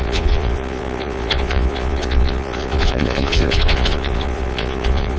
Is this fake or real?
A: fake